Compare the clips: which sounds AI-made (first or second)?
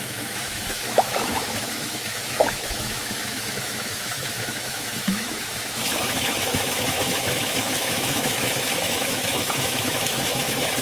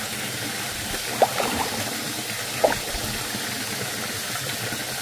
first